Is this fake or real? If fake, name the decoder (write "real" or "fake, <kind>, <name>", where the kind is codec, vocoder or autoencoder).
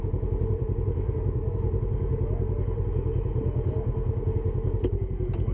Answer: real